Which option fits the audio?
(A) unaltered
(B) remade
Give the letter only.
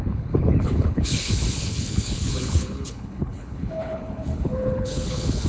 B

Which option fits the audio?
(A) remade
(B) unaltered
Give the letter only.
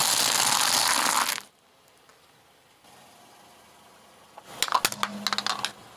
B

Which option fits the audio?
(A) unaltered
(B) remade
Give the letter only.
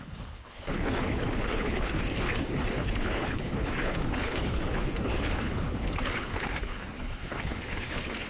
B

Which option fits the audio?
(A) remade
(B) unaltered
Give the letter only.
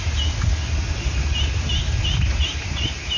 B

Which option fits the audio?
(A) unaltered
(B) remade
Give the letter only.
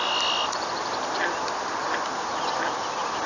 A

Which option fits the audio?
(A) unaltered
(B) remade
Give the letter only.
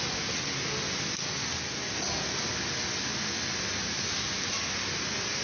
A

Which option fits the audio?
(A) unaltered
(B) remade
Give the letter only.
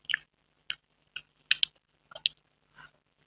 A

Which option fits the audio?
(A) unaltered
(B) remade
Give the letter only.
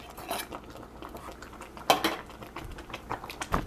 A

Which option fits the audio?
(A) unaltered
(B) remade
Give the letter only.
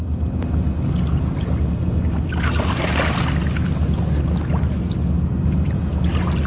A